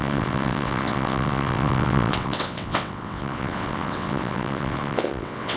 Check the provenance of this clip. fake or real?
fake